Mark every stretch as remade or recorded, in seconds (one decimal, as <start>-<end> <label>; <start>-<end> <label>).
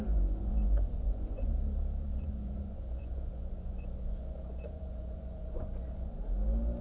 0.0-1.5 remade; 1.5-2.1 recorded; 2.1-6.2 remade; 6.2-6.8 recorded